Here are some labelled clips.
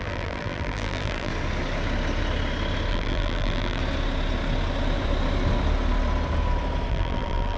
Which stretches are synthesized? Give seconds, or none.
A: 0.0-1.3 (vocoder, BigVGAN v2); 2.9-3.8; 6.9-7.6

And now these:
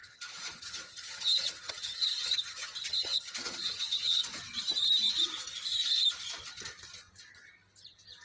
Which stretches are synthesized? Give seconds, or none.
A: 0.0-4.3 (vocoder, HiFi-GAN)

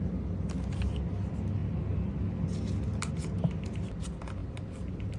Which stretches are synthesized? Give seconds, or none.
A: 2.9-3.7 (vocoder, BigVGAN v2); 4.4-5.2

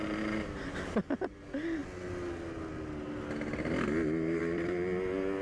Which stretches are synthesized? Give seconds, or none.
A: none

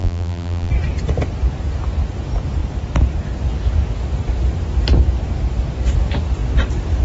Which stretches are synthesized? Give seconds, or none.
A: 0.0-0.7 (vocoder, BigVGAN v2)